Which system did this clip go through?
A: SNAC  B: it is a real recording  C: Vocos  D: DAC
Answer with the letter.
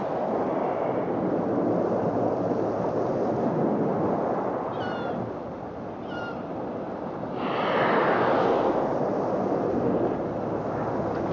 B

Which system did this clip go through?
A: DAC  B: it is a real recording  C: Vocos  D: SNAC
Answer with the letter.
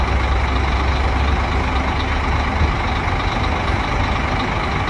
B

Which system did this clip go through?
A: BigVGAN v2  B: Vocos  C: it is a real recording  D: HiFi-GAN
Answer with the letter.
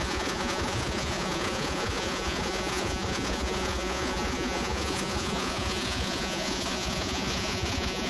B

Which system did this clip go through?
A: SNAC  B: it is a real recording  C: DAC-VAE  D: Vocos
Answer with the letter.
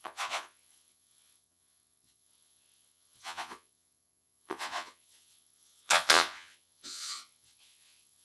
D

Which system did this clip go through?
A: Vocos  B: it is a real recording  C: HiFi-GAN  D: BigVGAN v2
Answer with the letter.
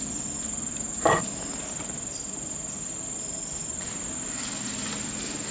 B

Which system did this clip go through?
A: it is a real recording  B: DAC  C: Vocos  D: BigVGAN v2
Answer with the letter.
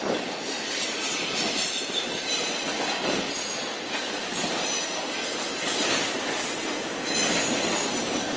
A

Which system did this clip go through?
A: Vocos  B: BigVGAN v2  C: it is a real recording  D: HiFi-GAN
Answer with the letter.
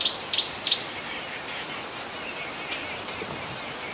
C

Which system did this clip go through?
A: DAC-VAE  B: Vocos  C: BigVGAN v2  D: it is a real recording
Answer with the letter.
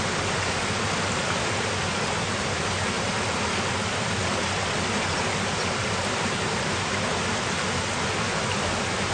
D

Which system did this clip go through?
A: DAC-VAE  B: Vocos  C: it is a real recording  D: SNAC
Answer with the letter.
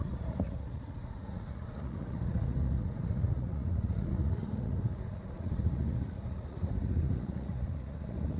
B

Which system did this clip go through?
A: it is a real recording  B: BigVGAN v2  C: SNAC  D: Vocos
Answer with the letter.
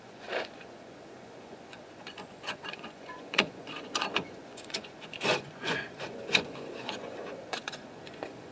D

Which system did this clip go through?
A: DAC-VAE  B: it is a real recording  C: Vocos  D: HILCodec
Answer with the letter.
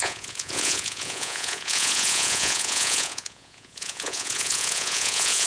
C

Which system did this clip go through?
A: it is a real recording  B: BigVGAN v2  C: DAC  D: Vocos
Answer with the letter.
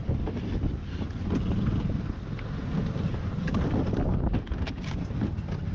A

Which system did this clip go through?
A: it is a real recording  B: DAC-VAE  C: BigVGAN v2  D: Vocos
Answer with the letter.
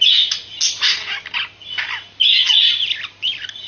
A